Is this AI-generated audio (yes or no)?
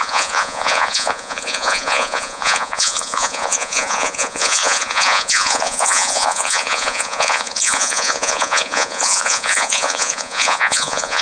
yes